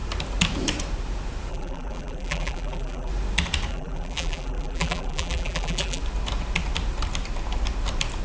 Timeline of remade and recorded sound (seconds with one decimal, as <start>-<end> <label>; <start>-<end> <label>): 0.0-1.5 recorded; 1.5-3.1 remade; 3.1-3.7 recorded; 3.7-6.0 remade; 6.0-8.2 recorded